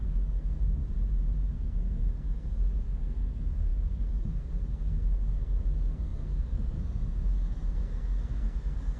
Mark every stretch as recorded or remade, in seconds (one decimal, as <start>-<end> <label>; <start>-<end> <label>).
0.0-0.8 remade; 0.8-1.5 recorded; 1.5-9.0 remade